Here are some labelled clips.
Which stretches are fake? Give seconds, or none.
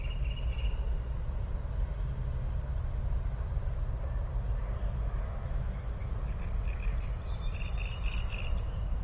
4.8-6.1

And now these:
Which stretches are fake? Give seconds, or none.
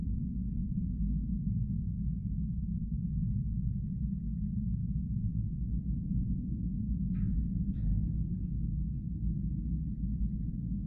none